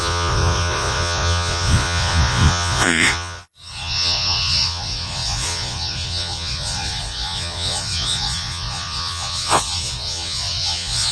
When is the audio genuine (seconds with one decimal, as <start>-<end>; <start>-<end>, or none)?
none